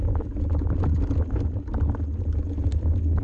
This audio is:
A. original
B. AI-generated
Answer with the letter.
A